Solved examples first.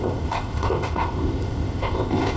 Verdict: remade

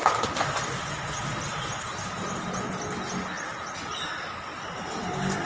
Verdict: recorded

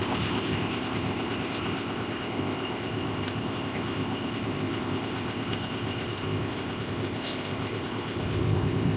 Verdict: remade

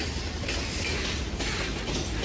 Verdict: recorded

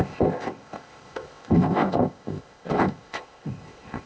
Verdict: remade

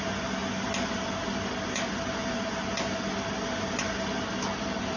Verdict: recorded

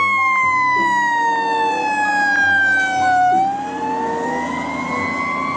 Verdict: recorded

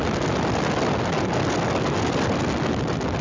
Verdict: recorded